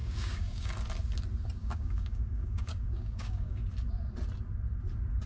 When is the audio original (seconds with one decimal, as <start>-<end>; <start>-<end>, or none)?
0.7-1.6; 3.6-5.3